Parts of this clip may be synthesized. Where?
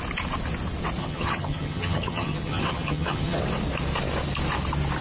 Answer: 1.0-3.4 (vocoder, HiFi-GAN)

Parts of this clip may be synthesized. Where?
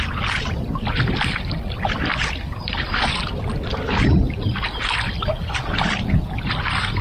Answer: none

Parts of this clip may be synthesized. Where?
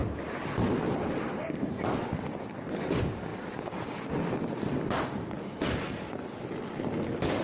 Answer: 3.3-4.1 (vocoder, BigVGAN v2)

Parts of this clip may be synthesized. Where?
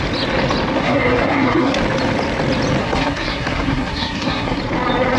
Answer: 0.8-1.8 (codec, SNAC); 2.8-4.6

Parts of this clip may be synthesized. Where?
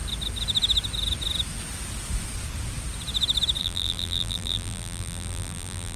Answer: 3.6-6.0 (vocoder, BigVGAN v2)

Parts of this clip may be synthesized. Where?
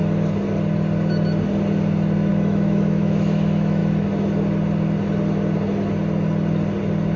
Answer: 2.3-3.8 (autoencoder, DAC-VAE)